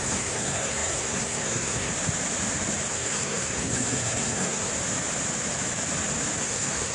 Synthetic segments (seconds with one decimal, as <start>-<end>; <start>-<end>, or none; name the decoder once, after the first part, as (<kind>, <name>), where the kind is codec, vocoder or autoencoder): 0.0-1.9 (codec, SNAC); 2.9-4.7; 6.4-6.9